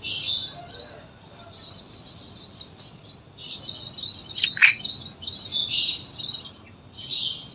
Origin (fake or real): real